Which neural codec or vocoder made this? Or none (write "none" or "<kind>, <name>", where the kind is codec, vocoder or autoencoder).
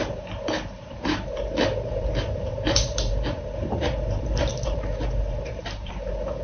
vocoder, BigVGAN v2